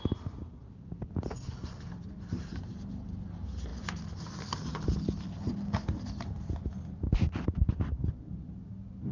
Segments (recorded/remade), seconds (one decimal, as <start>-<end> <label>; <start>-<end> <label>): 0.0-9.1 recorded